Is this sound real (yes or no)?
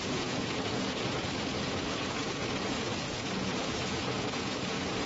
no